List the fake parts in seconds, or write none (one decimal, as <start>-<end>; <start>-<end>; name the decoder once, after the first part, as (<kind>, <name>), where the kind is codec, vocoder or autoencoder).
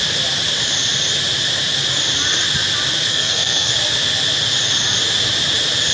3.1-3.7 (codec, SNAC)